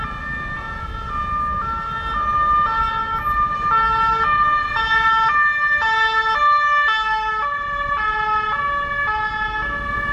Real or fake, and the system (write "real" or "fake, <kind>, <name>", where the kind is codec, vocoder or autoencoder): real